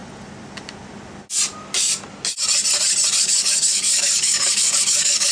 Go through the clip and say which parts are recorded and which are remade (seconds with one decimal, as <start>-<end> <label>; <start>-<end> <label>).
0.0-3.2 recorded; 3.2-5.3 remade